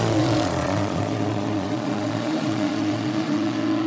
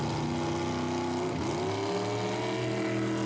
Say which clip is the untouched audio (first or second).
second